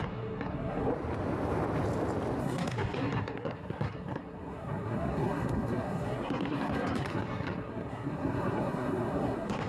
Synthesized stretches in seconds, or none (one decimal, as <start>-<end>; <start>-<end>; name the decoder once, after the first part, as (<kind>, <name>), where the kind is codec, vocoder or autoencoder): 0.0-0.9 (codec, SNAC); 2.4-9.7